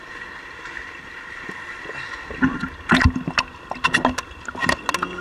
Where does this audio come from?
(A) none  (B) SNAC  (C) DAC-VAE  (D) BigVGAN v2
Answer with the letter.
A